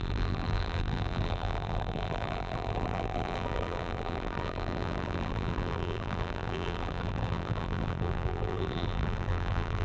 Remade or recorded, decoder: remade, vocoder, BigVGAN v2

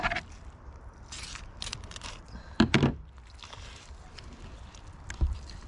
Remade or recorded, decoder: remade, vocoder, BigVGAN v2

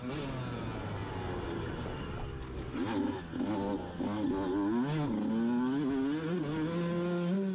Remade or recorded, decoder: recorded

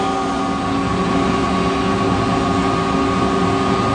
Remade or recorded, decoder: recorded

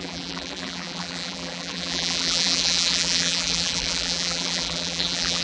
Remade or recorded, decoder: remade, vocoder, BigVGAN v2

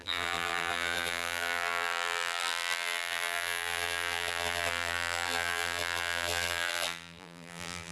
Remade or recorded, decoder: remade, vocoder, BigVGAN v2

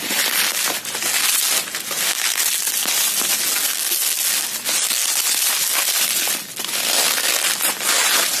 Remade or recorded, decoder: recorded